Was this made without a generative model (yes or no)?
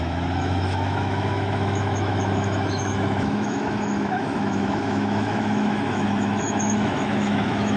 no